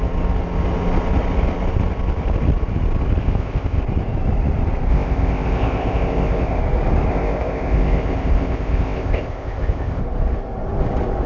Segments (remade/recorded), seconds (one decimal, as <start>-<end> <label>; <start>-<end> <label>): 0.0-3.2 recorded; 3.2-3.8 remade; 3.8-4.9 recorded; 4.9-6.6 remade; 6.6-7.1 recorded; 7.1-10.0 remade; 10.0-11.3 recorded